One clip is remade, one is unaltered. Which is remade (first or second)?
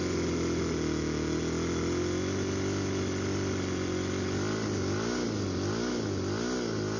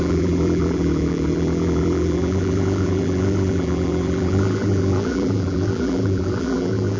second